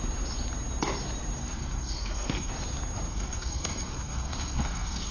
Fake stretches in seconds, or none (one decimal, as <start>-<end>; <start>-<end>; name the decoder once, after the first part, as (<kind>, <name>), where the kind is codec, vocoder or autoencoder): 1.4-2.5 (codec, SNAC); 3.1-5.1